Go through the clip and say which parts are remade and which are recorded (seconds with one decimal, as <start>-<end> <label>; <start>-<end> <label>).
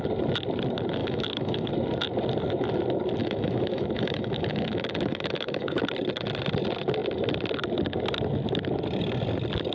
0.0-1.0 recorded; 1.0-1.7 remade; 1.7-3.2 recorded; 3.2-5.8 remade; 5.8-9.7 recorded